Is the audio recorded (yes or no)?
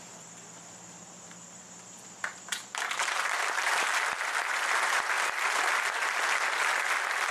yes